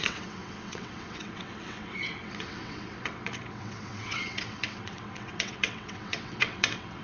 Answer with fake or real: fake